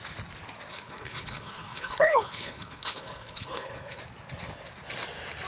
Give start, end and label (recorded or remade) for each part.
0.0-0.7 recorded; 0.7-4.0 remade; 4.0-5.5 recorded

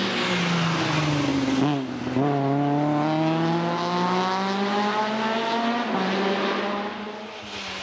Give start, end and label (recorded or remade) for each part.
0.0-7.8 recorded

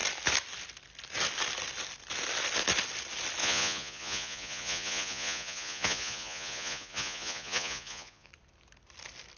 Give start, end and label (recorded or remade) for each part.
0.0-3.4 recorded; 3.4-8.3 remade; 8.3-9.4 recorded

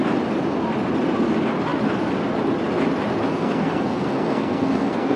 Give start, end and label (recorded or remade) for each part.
0.0-3.3 recorded; 3.3-5.2 remade

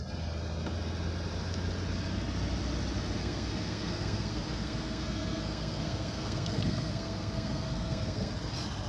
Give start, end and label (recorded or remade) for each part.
0.0-3.2 recorded; 3.2-8.3 remade; 8.3-8.9 recorded

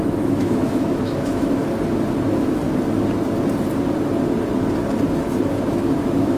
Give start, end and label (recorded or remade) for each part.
0.0-1.6 remade; 1.6-2.2 recorded; 2.2-2.6 remade; 2.6-5.7 recorded; 5.7-6.4 remade